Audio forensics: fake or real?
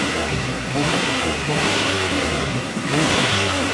fake